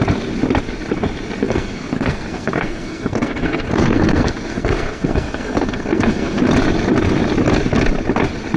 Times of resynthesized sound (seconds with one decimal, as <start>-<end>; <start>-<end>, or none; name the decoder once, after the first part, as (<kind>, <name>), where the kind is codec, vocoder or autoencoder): 1.4-6.4 (codec, SNAC)